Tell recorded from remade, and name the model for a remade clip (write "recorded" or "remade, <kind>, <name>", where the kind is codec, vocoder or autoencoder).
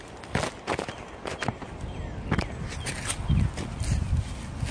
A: recorded